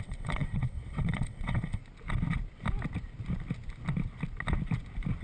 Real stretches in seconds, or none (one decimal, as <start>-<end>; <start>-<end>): 1.8-5.2